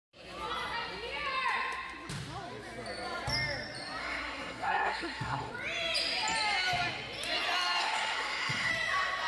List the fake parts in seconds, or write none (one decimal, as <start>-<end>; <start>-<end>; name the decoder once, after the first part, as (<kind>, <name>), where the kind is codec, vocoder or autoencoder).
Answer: 4.0-5.5 (codec, SNAC); 7.8-8.7